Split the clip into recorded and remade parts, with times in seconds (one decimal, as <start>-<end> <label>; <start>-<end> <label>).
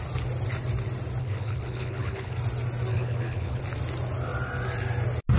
0.0-1.2 recorded; 1.2-2.4 remade; 2.4-2.9 recorded; 2.9-3.6 remade; 3.6-5.4 recorded